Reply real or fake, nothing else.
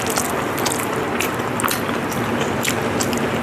real